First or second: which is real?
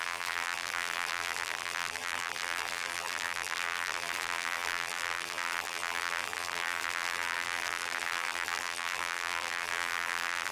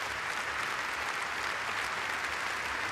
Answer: second